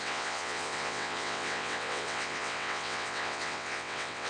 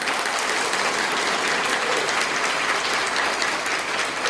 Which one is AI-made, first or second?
first